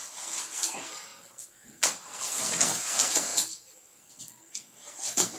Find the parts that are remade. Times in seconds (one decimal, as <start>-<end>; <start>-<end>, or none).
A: 0.0-5.4